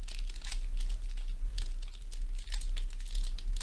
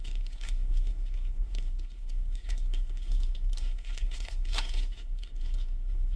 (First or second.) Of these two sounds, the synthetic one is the second